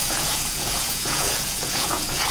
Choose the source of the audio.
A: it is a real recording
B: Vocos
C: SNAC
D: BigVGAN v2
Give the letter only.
B